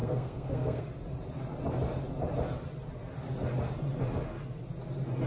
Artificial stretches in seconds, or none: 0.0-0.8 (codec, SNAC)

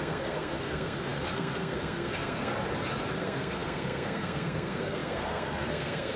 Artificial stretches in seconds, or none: 0.0-2.5 (codec, SNAC); 3.2-6.2

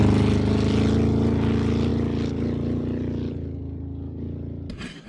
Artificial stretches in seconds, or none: none